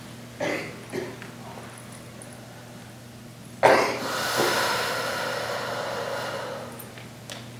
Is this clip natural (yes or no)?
yes